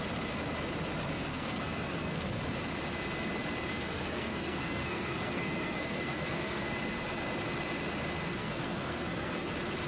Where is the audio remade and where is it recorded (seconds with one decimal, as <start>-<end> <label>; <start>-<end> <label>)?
0.0-1.3 recorded; 1.3-2.4 remade; 2.4-3.7 recorded; 3.7-6.7 remade; 6.7-8.4 recorded; 8.4-9.5 remade; 9.5-9.9 recorded